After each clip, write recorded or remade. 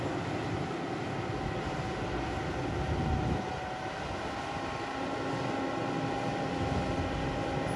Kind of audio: recorded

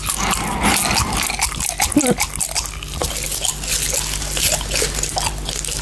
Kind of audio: recorded